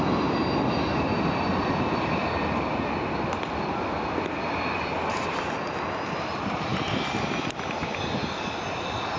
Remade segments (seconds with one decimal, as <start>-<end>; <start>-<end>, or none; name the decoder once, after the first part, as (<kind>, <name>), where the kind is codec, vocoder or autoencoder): none